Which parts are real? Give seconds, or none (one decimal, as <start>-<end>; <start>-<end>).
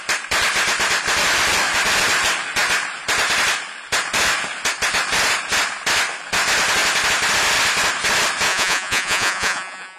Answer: 0.0-8.5